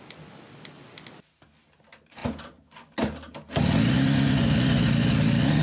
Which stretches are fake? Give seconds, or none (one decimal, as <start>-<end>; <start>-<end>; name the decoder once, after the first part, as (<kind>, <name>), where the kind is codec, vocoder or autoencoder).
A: none